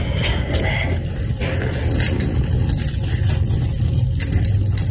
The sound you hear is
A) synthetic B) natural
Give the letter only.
B